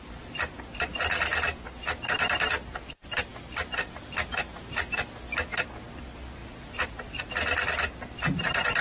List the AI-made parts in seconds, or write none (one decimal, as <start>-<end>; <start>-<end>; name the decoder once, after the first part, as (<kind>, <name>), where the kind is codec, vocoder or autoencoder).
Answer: 0.0-3.3 (vocoder, BigVGAN v2); 6.0-6.4; 7.2-8.8